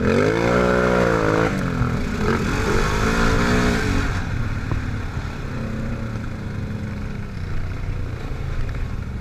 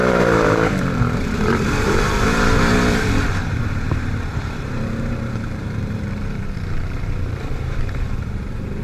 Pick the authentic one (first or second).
first